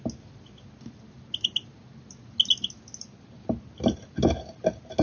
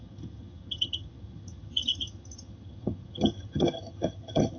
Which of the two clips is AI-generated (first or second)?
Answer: second